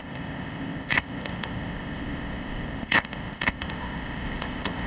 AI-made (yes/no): yes